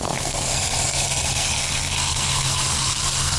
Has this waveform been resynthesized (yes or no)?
yes